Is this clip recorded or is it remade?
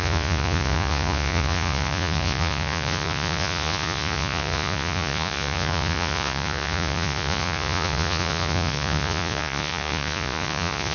remade